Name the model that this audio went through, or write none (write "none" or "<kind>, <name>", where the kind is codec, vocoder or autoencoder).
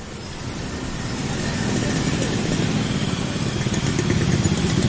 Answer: none